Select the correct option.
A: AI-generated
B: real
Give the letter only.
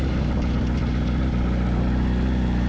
B